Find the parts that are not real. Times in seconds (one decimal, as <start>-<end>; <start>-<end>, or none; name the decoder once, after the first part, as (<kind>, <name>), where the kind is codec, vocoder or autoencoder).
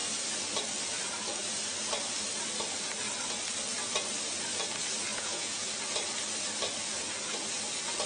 5.1-5.7 (vocoder, Vocos)